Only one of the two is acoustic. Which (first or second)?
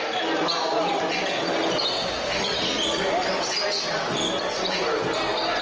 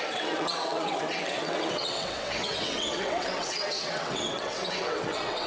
first